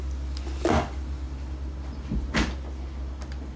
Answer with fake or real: real